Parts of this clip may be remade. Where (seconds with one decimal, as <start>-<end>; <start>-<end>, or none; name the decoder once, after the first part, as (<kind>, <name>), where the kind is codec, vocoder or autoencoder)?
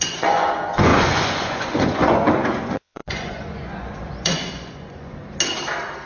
0.0-5.2 (vocoder, Vocos)